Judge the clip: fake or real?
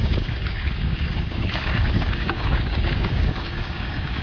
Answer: fake